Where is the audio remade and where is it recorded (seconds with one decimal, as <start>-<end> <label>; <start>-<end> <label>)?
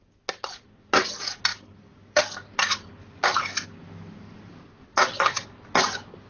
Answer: 0.0-1.5 recorded; 1.5-2.5 remade; 2.5-6.3 recorded